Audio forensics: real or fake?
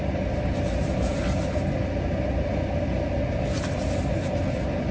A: real